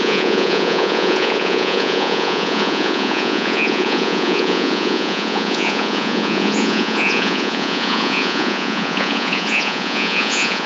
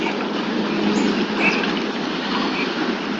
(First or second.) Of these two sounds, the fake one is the first